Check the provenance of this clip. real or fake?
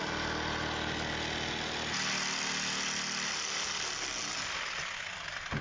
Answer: real